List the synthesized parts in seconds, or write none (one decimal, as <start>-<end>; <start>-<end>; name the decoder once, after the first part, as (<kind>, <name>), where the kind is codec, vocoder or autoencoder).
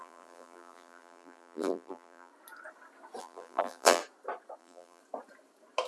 0.0-2.3 (vocoder, BigVGAN v2); 3.2-4.0; 4.6-5.0